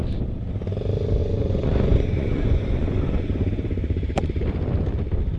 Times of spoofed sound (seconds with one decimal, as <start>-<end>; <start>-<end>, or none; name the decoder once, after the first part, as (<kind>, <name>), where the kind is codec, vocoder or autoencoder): 1.2-4.4 (vocoder, Vocos)